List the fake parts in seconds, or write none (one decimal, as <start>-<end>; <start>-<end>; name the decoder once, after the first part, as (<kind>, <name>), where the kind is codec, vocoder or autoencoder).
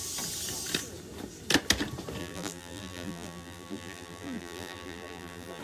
2.2-5.6 (vocoder, BigVGAN v2)